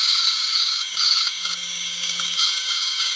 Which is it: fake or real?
fake